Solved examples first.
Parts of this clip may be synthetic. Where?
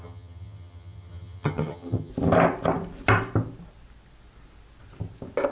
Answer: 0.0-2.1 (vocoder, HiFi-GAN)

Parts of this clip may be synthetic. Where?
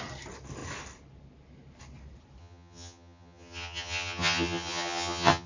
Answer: 2.4-5.5 (vocoder, HiFi-GAN)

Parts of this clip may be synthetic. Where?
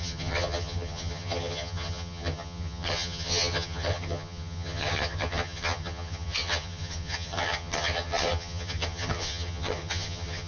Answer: 0.0-10.5 (vocoder, HiFi-GAN)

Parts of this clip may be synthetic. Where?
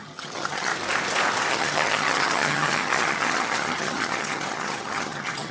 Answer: 0.0-0.7 (vocoder, HiFi-GAN); 1.5-5.5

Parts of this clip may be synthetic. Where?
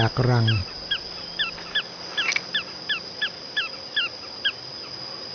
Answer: none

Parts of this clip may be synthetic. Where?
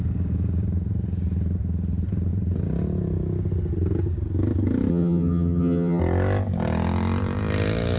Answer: 4.9-6.0 (vocoder, HiFi-GAN)